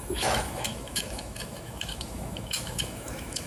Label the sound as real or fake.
fake